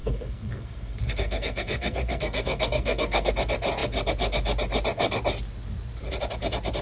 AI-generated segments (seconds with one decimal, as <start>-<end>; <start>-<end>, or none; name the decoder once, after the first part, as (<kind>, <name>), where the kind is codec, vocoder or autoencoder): 0.0-3.3 (codec, SNAC)